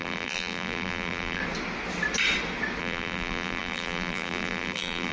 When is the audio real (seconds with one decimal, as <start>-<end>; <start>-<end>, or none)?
1.4-2.8